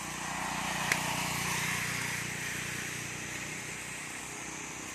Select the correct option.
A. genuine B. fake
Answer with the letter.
A